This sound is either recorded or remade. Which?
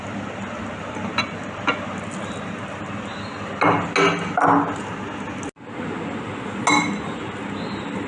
recorded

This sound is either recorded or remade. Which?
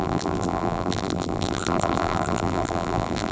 remade